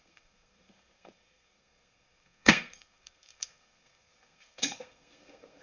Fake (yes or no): yes